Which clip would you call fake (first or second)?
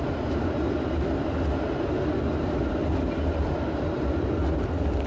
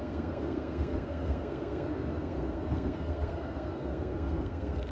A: second